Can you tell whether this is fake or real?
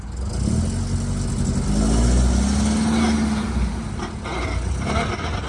real